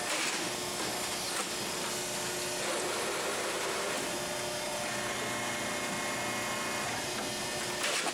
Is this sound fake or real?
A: real